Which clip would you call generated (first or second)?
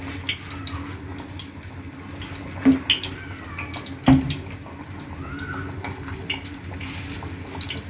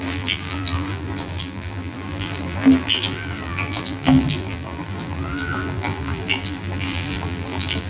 second